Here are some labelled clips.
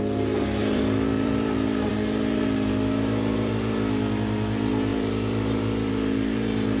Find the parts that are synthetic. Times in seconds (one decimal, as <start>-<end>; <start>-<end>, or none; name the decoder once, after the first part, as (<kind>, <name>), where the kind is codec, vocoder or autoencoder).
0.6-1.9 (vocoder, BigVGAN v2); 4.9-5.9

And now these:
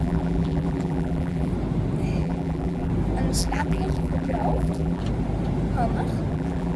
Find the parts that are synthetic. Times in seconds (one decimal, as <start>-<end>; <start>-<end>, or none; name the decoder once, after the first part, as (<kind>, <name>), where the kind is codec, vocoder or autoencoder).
0.0-1.5 (vocoder, BigVGAN v2); 2.2-2.9; 3.4-5.0; 6.3-6.8

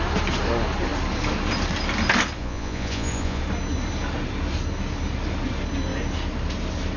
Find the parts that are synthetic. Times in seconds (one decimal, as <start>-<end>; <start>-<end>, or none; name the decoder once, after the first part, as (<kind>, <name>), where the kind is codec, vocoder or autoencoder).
2.4-3.4 (vocoder, Vocos)

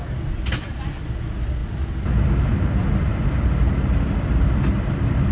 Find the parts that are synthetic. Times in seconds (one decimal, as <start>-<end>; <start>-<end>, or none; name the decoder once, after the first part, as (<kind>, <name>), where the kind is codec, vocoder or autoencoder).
none

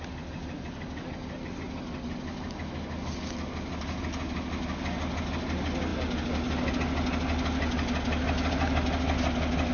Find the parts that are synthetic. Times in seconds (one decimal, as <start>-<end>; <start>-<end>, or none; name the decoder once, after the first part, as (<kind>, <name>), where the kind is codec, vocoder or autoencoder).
none

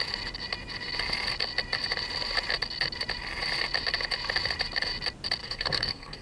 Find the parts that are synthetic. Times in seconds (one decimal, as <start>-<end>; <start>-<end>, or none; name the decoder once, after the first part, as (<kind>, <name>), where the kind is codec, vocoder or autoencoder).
5.4-6.2 (codec, SNAC)